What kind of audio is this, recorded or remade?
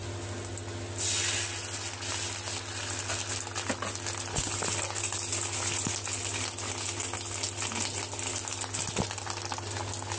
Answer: recorded